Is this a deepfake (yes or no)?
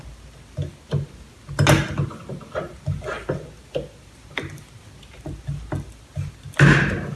no